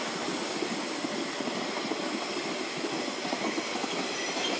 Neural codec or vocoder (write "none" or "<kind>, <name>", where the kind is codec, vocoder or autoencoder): none